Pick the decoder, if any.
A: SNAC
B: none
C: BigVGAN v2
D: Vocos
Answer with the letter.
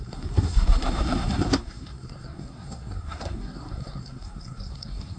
A